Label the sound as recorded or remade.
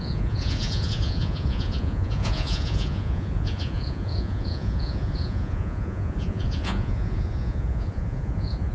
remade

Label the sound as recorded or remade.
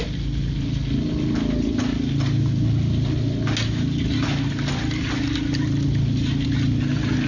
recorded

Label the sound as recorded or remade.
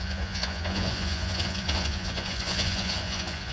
remade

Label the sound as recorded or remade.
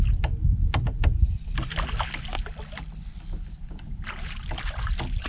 recorded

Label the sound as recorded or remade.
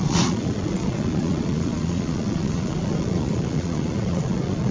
remade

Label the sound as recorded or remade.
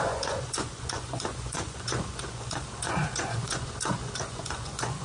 remade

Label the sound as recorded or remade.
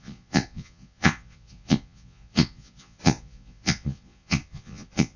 remade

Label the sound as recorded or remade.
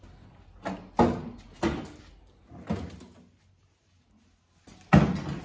recorded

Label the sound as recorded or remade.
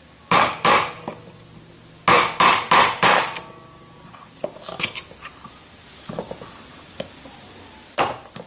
recorded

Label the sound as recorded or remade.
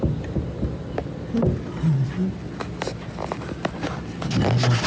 recorded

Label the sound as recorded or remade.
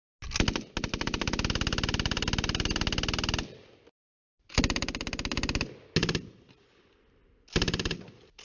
recorded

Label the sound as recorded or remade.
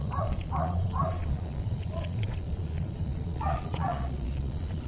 remade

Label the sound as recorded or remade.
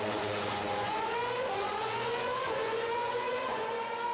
remade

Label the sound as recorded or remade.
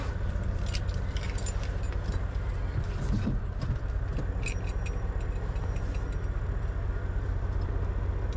recorded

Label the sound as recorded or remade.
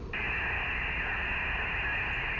recorded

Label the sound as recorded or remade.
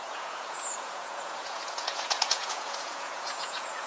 remade